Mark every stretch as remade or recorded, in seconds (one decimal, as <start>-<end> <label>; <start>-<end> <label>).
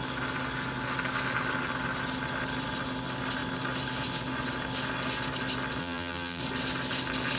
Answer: 0.0-5.8 recorded; 5.8-6.4 remade; 6.4-7.4 recorded